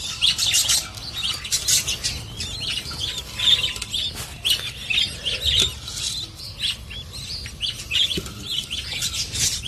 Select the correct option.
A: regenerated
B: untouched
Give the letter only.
B